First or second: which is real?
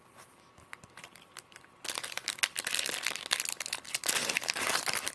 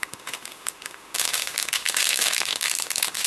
first